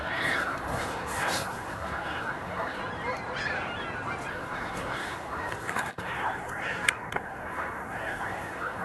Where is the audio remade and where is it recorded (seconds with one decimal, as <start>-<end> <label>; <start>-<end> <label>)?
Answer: 0.0-2.8 remade; 2.8-4.3 recorded; 4.3-8.8 remade